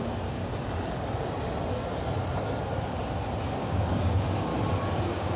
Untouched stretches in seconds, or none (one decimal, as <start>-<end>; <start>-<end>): 0.4-3.6; 4.5-5.0